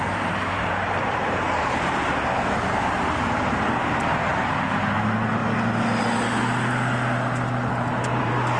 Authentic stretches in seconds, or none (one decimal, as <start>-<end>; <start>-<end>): 5.4-8.2